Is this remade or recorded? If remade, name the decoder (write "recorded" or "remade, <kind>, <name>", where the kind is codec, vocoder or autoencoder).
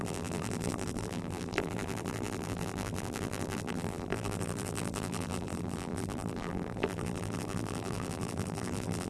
remade, vocoder, BigVGAN v2